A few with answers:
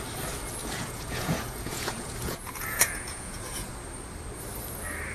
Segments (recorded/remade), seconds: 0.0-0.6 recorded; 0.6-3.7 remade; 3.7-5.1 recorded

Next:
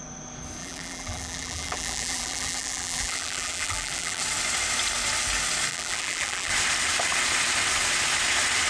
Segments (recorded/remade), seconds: 0.0-0.6 recorded; 0.6-4.2 remade; 4.2-5.7 recorded; 5.7-6.5 remade; 6.5-8.7 recorded

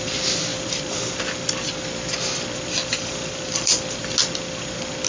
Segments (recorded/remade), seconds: 0.0-0.5 recorded; 0.5-1.2 remade; 1.2-2.9 recorded; 2.9-4.0 remade; 4.0-5.1 recorded

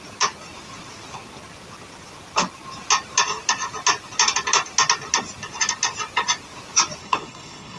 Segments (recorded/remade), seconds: 0.0-7.0 recorded; 7.0-7.8 remade

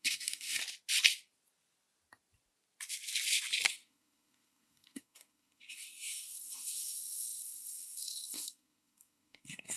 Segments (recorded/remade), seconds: 0.0-0.6 remade; 0.6-3.7 recorded; 3.7-9.8 remade

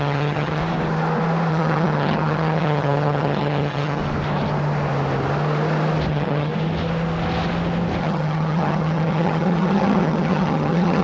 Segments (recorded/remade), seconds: 0.0-0.6 remade; 0.6-1.5 recorded; 1.5-4.0 remade; 4.0-6.1 recorded; 6.1-6.5 remade; 6.5-8.0 recorded; 8.0-11.0 remade

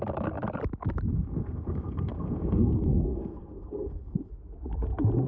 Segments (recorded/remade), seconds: 0.0-1.1 recorded; 1.1-4.3 remade; 4.3-5.3 recorded